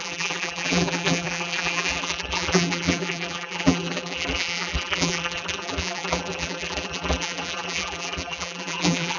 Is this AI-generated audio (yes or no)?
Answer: yes